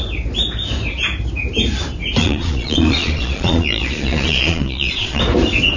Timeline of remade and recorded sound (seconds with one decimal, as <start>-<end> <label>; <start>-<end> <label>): 0.0-2.2 recorded; 2.2-5.2 remade; 5.2-5.8 recorded